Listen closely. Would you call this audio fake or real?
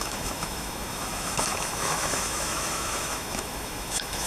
fake